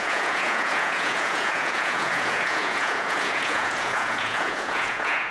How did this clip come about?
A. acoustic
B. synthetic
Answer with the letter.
B